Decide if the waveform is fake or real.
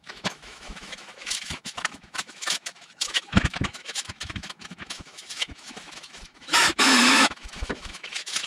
fake